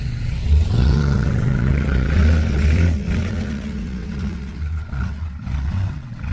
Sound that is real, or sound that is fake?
fake